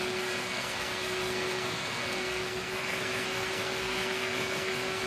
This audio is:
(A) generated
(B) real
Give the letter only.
A